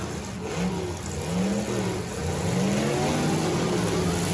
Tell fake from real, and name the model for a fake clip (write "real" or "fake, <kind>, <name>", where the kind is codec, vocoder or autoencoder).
real